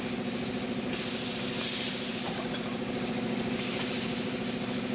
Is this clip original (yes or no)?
yes